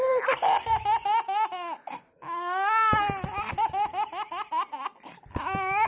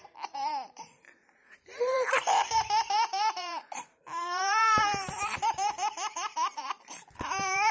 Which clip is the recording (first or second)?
first